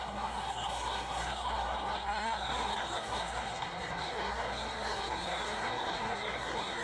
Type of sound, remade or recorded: remade